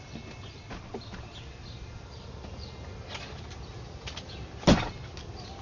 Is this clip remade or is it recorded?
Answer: recorded